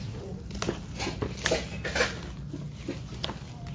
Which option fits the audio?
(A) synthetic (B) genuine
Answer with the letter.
B